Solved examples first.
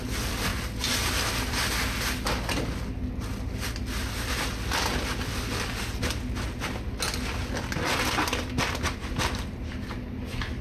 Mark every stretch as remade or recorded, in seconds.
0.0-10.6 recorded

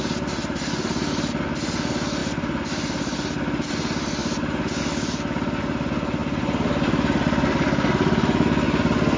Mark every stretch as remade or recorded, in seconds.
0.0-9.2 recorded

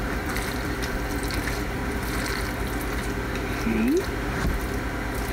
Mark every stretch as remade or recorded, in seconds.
0.0-1.8 remade; 1.8-5.3 recorded

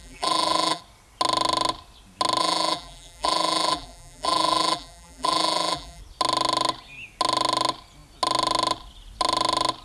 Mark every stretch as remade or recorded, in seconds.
0.0-0.8 remade; 0.8-2.4 recorded; 2.4-6.0 remade; 6.0-9.8 recorded